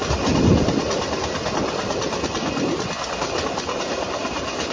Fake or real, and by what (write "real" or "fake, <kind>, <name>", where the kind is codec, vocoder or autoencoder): real